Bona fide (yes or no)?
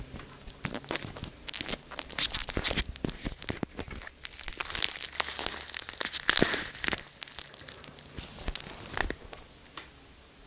yes